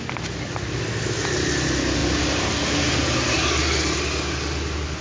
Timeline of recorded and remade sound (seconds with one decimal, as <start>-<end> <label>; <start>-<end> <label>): 0.0-5.0 recorded